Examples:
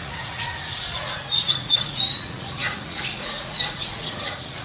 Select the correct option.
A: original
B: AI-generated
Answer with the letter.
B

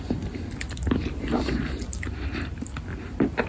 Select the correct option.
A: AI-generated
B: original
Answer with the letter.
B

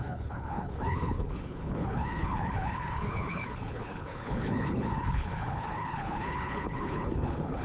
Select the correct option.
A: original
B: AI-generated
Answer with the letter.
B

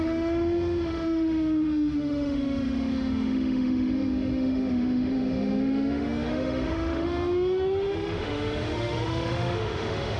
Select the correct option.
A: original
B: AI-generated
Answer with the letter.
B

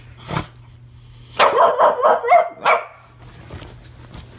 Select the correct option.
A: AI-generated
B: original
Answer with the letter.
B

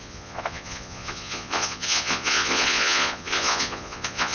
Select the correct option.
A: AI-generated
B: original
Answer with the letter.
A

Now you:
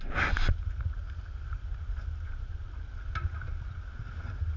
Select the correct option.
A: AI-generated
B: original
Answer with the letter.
B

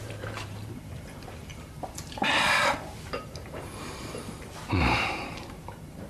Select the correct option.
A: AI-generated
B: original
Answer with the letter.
A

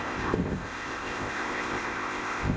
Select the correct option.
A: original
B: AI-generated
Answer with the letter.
B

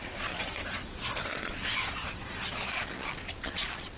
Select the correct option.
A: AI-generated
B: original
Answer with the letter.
A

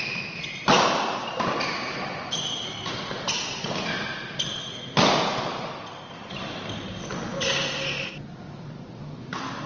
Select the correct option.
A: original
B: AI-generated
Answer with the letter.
A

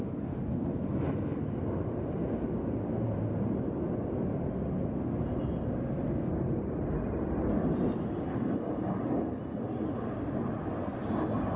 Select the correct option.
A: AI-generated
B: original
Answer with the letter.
B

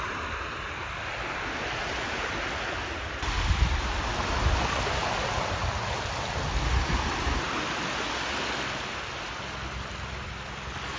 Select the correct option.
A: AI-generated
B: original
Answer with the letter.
B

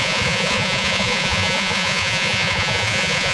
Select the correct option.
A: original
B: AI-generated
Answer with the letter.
B